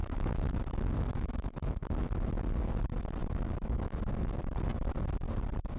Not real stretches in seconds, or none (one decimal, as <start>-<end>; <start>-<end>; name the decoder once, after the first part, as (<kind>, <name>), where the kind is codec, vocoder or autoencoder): 0.0-2.1 (autoencoder, DAC-VAE); 3.2-4.4